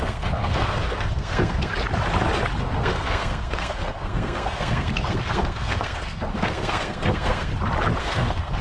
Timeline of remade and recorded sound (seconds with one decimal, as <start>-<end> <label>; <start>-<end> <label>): 0.0-1.7 remade; 1.7-2.6 recorded; 2.6-7.5 remade; 7.5-8.0 recorded; 8.0-8.6 remade